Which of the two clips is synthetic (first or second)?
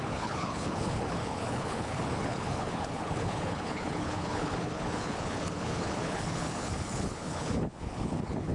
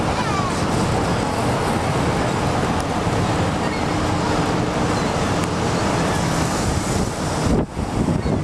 first